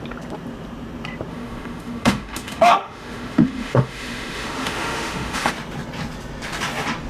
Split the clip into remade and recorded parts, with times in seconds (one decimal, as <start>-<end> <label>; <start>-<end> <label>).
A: 0.0-1.3 recorded; 1.3-5.5 remade; 5.5-7.1 recorded